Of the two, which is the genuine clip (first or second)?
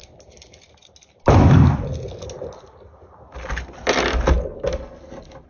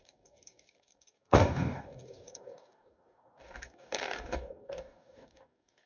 first